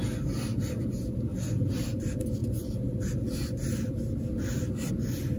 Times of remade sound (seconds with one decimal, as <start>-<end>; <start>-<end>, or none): none